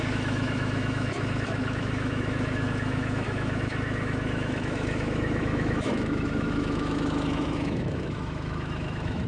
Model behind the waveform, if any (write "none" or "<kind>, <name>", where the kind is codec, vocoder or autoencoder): autoencoder, DAC-VAE